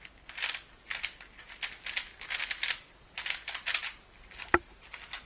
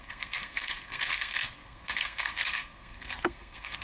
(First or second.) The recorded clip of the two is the first